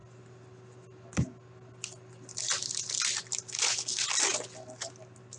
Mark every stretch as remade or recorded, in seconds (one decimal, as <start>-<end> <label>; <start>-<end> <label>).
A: 0.0-5.4 recorded